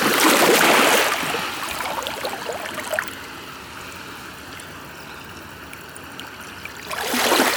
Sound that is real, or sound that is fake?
real